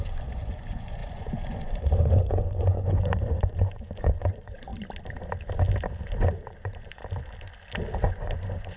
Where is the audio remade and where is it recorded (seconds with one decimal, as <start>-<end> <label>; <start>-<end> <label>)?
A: 0.0-4.7 remade; 4.7-6.2 recorded; 6.2-7.0 remade; 7.0-8.0 recorded; 8.0-8.8 remade